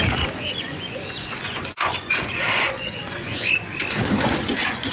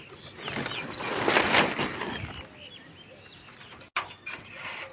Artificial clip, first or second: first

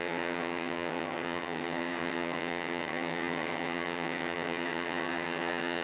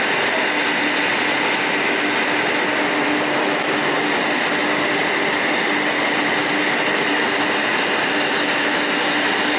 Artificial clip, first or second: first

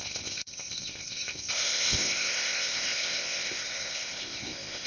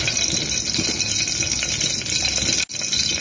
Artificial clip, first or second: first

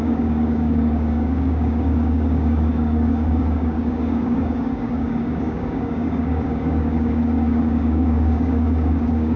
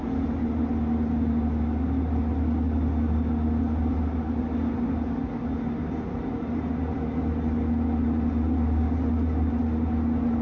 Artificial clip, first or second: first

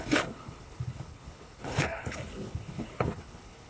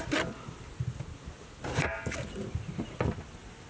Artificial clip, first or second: first